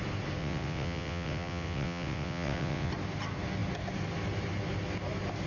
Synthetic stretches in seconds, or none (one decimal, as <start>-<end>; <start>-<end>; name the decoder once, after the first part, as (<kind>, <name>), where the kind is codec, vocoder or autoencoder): 0.4-2.9 (vocoder, WaveNeXt)